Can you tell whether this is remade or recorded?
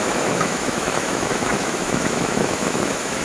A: remade